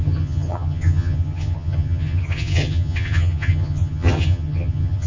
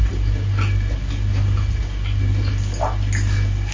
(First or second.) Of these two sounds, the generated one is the first